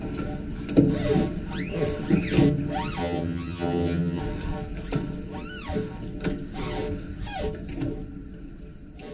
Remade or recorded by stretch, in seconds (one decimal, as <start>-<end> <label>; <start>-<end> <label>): 0.0-3.0 recorded; 3.0-4.2 remade; 4.2-9.1 recorded